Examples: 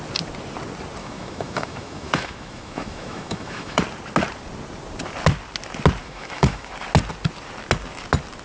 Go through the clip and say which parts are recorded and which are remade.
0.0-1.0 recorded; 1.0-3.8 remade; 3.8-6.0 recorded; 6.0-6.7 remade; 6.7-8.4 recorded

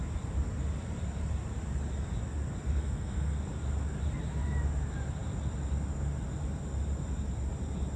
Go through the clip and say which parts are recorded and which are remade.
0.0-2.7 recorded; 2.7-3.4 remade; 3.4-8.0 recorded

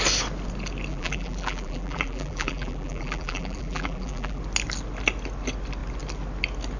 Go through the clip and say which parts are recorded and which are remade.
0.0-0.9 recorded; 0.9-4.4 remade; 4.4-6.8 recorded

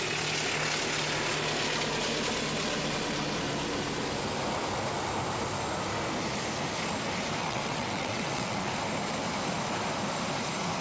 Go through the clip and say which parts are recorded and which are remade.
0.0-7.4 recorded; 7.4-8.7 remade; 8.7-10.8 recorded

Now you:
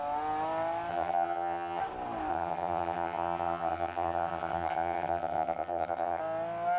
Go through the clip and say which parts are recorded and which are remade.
0.0-0.9 recorded; 0.9-1.8 remade; 1.8-2.3 recorded; 2.3-6.2 remade; 6.2-6.8 recorded

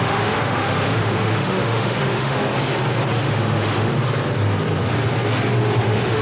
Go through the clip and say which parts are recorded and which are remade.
0.0-2.5 remade; 2.5-3.2 recorded; 3.2-3.9 remade; 3.9-5.8 recorded; 5.8-6.2 remade

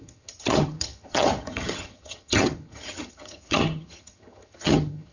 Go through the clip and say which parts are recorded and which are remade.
0.0-5.1 remade